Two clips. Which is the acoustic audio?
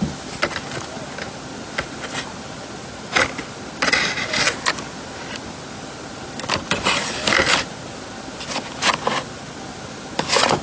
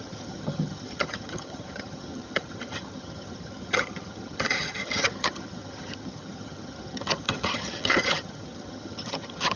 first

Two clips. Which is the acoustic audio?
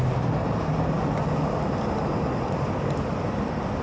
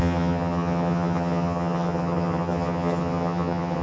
first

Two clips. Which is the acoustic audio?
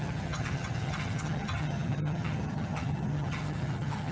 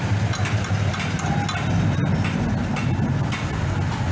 second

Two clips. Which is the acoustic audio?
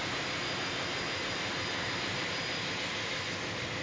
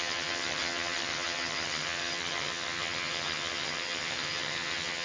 first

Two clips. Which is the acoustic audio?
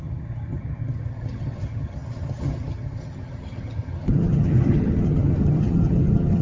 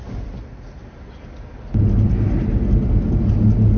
second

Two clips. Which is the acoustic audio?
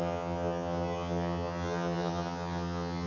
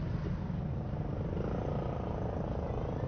second